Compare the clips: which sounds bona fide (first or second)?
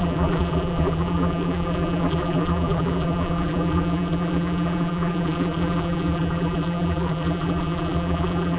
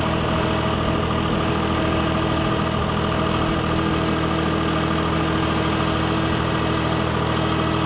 second